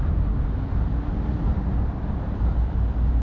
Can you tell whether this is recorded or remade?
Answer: recorded